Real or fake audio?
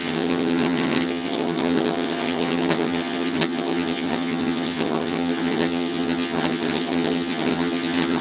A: fake